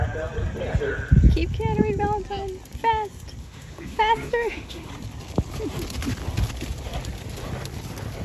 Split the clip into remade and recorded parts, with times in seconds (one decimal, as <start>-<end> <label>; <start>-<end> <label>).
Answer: 0.0-3.4 recorded; 3.4-4.9 remade; 4.9-8.2 recorded